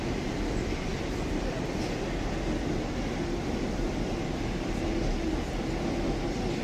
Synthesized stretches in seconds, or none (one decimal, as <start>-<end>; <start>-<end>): none